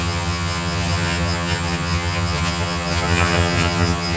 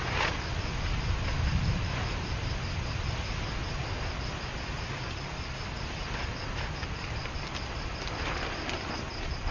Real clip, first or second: second